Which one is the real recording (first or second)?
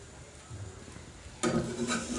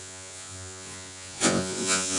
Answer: first